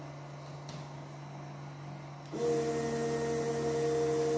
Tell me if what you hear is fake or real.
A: real